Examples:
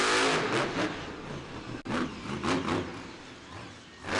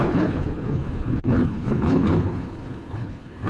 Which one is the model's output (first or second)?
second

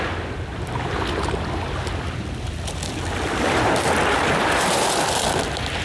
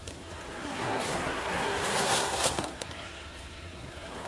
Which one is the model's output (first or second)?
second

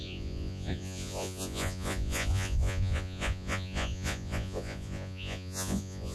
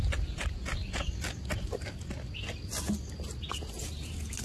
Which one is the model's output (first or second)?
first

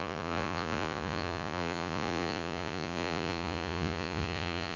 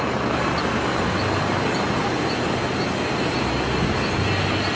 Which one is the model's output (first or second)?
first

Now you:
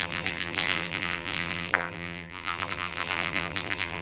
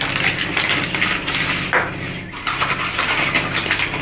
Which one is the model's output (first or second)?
first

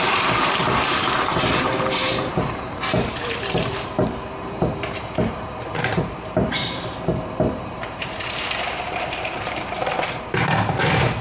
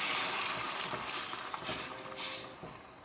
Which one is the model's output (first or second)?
first